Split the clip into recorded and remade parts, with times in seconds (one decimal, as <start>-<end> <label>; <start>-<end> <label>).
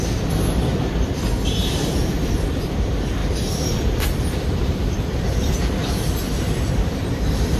0.0-0.7 recorded; 0.7-1.3 remade; 1.3-1.9 recorded; 1.9-2.6 remade; 2.6-3.2 recorded; 3.2-7.0 remade; 7.0-7.6 recorded